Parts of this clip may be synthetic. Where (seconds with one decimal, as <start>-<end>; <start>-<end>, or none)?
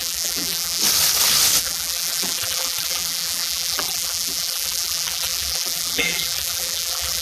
0.0-0.8; 1.6-7.2